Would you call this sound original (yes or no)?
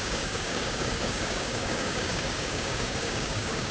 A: no